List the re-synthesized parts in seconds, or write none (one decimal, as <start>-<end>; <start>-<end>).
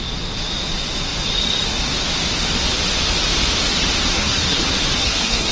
4.1-4.6; 5.0-5.5